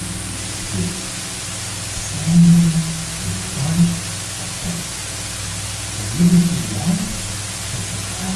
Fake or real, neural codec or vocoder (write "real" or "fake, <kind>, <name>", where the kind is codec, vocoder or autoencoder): real